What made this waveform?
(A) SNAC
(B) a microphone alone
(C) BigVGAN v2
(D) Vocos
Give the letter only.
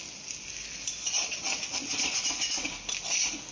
B